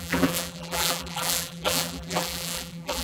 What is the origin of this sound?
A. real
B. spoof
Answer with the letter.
B